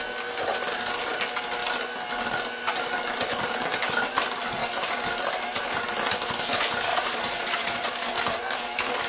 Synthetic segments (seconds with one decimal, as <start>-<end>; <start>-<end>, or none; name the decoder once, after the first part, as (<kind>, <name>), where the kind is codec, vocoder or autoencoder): 6.9-7.9 (vocoder, Vocos)